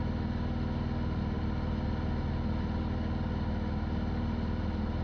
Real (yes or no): yes